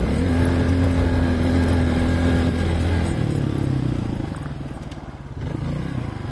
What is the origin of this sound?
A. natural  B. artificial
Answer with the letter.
A